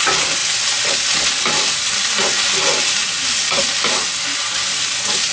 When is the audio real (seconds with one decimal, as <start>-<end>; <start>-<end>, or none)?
0.0-2.2; 3.6-5.3